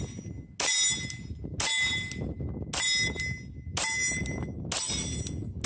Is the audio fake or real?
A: real